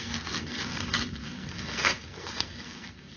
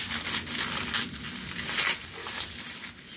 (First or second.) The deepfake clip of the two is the first